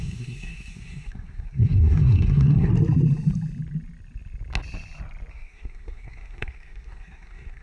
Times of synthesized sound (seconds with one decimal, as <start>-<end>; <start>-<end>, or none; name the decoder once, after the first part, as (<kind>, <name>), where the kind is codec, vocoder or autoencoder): 0.0-2.7 (codec, SNAC); 5.3-7.6